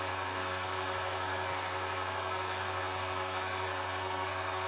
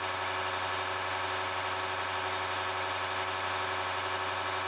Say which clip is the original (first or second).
second